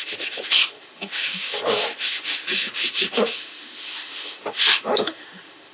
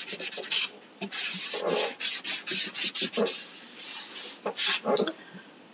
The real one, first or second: second